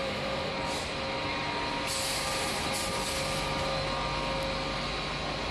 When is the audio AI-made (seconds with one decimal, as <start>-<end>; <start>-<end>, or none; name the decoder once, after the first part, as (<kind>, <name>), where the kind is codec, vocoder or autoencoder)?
0.0-0.5 (autoencoder, DAC-VAE)